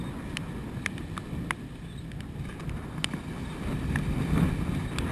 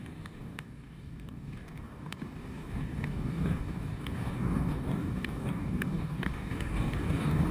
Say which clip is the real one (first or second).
first